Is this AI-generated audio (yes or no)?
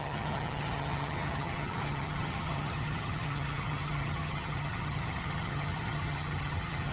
yes